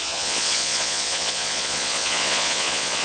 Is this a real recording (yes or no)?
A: no